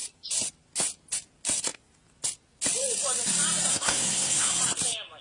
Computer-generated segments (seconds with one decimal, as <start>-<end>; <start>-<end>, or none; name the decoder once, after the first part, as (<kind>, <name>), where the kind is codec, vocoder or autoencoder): 3.7-4.5 (codec, SNAC)